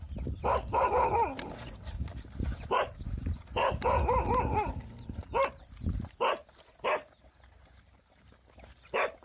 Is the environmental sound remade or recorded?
recorded